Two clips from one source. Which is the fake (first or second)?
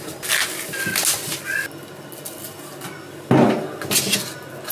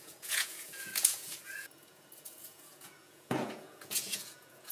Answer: second